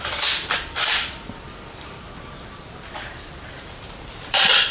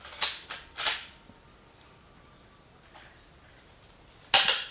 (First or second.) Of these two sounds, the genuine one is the second